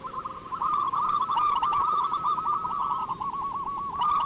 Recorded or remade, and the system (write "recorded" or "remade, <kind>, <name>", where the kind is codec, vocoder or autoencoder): remade, vocoder, BigVGAN v2